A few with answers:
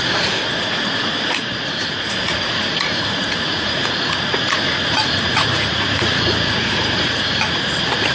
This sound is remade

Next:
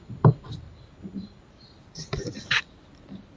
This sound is remade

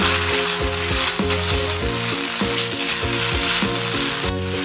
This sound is recorded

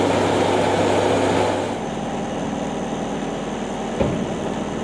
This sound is recorded